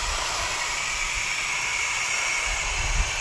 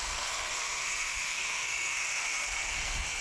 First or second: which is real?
first